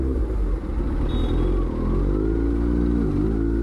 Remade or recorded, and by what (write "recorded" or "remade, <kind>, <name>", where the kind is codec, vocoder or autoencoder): recorded